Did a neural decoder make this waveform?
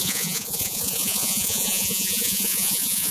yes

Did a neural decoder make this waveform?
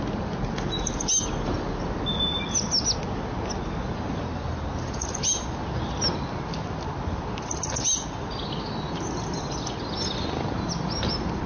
no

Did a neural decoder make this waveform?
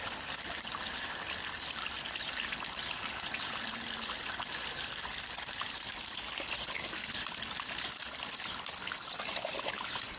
no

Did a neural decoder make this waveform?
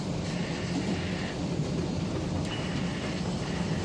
yes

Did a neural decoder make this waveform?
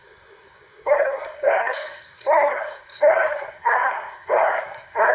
yes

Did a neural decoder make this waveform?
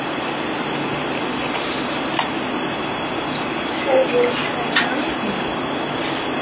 no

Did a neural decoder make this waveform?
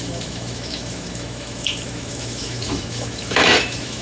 yes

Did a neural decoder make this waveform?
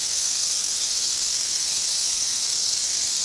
yes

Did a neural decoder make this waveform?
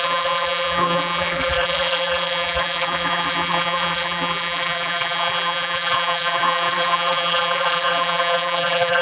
yes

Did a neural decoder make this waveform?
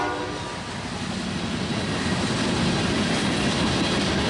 no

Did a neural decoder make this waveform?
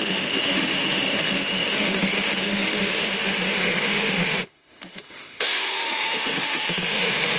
yes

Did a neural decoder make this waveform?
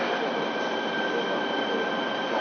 no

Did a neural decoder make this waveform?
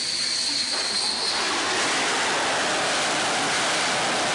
no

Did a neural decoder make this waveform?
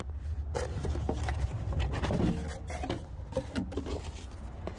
no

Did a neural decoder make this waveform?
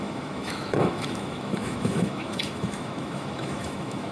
yes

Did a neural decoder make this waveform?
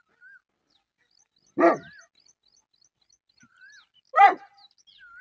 no